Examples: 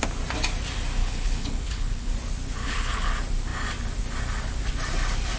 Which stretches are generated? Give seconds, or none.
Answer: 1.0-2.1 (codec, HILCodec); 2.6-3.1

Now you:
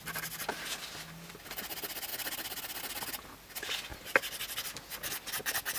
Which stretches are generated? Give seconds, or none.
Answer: none

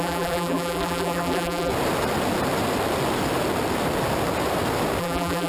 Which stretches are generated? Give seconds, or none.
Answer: 0.0-1.7 (vocoder, BigVGAN v2); 5.0-5.5

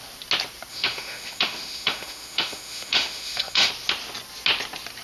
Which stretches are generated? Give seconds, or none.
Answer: 0.7-3.7 (autoencoder, DAC-VAE)

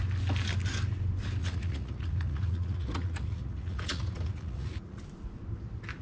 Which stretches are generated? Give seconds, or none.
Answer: 1.4-5.0 (vocoder, Vocos)

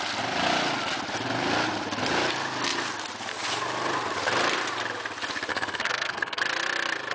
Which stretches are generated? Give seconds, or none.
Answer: 5.5-6.4 (codec, SNAC)

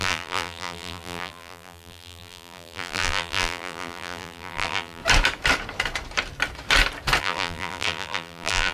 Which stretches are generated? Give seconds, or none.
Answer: 0.0-5.0 (vocoder, BigVGAN v2); 7.2-8.7